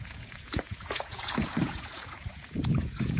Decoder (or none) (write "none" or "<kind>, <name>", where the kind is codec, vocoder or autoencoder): vocoder, Vocos